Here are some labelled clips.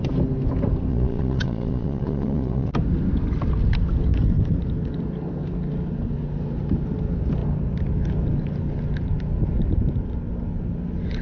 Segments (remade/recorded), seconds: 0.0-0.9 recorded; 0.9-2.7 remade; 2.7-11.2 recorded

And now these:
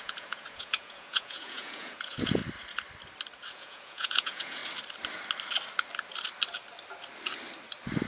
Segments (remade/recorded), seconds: 0.0-2.4 remade; 2.4-3.5 recorded; 3.5-4.6 remade; 4.6-8.1 recorded

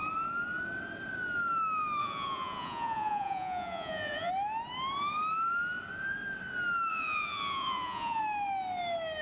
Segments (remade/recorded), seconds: 0.0-2.0 recorded; 2.0-4.3 remade; 4.3-6.9 recorded; 6.9-8.2 remade; 8.2-9.2 recorded

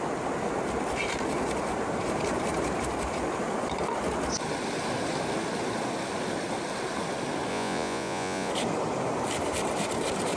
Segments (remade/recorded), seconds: 0.0-7.5 recorded; 7.5-8.5 remade; 8.5-10.4 recorded